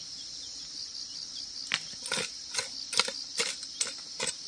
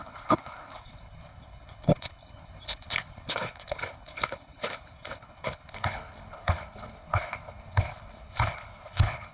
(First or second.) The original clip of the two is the first